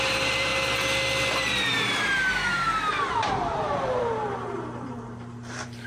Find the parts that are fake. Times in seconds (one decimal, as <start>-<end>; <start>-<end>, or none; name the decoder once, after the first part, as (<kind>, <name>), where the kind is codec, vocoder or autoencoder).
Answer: 0.0-0.5 (vocoder, BigVGAN v2); 2.9-5.9